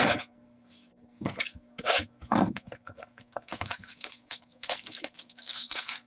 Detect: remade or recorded remade